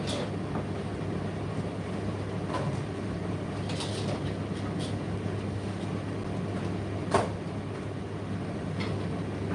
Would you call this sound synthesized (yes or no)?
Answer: no